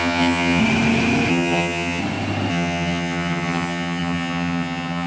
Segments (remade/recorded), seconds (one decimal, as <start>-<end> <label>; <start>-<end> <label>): 0.0-0.6 remade; 0.6-1.3 recorded; 1.3-2.0 remade; 2.0-2.5 recorded; 2.5-5.1 remade